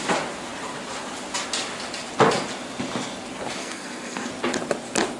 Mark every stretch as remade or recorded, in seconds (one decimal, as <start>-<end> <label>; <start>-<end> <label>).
0.0-3.6 recorded; 3.6-4.3 remade; 4.3-5.2 recorded